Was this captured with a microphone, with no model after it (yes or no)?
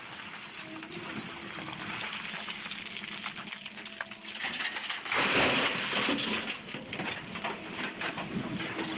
yes